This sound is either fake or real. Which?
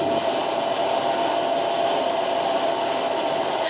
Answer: real